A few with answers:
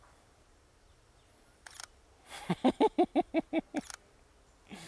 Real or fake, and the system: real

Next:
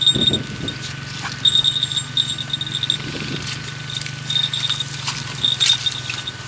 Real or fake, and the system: real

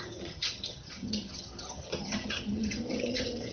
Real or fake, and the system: fake, vocoder, HiFi-GAN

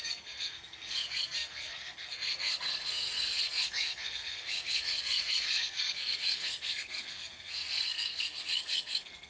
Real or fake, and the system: fake, codec, SNAC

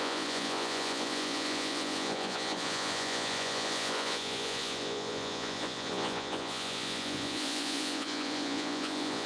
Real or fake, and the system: fake, vocoder, Vocos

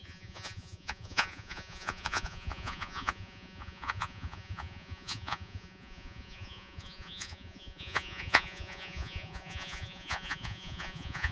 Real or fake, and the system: fake, vocoder, Vocos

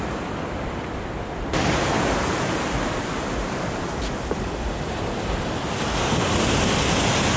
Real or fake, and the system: real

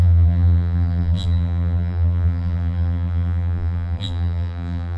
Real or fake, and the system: fake, vocoder, BigVGAN v2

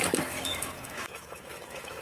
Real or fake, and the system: fake, autoencoder, DAC-VAE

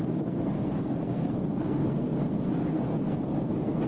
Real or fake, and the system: fake, codec, SNAC